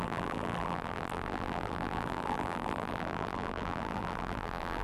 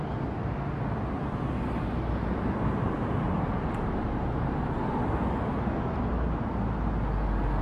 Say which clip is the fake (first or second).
first